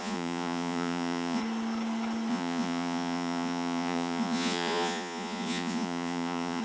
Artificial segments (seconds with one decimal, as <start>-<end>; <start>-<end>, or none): 0.0-1.4; 2.3-6.6